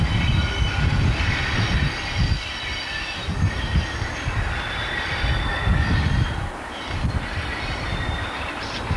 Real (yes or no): no